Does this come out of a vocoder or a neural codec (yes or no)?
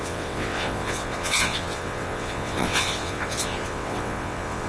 yes